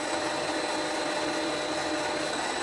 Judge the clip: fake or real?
real